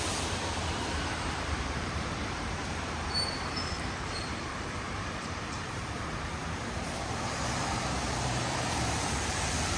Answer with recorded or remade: remade